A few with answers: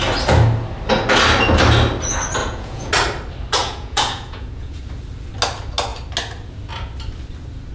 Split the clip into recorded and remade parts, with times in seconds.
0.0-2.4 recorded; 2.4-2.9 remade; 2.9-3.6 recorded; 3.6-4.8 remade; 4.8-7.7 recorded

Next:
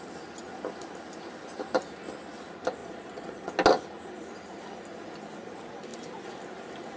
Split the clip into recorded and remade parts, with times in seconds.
0.0-2.8 recorded; 2.8-3.5 remade; 3.5-7.0 recorded

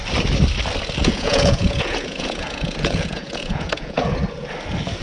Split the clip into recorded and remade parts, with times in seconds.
0.0-1.0 recorded; 1.0-4.0 remade; 4.0-5.0 recorded

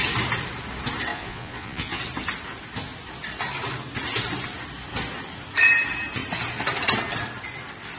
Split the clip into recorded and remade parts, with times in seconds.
0.0-1.1 recorded; 1.1-2.0 remade; 2.0-8.0 recorded

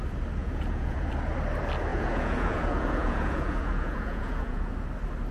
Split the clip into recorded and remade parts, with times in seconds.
0.0-0.4 recorded; 0.4-1.1 remade; 1.1-1.9 recorded; 1.9-4.7 remade; 4.7-5.3 recorded

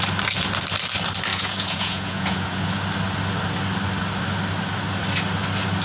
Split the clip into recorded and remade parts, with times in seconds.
0.0-1.3 recorded; 1.3-2.7 remade; 2.7-5.8 recorded

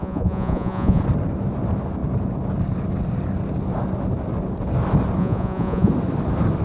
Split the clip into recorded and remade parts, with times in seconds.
0.0-1.0 remade; 1.0-5.2 recorded; 5.2-5.9 remade; 5.9-6.6 recorded